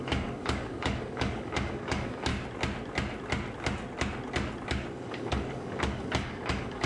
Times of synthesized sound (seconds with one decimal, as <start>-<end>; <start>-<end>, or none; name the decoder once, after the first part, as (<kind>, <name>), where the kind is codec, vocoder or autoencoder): 0.0-2.3 (codec, DAC); 4.9-6.9